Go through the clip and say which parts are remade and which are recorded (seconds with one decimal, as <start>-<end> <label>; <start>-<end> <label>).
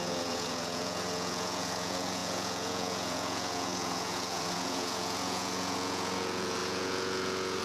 0.0-7.6 remade